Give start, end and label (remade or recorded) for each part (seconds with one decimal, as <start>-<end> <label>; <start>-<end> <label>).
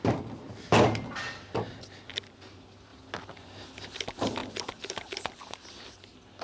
0.0-6.4 recorded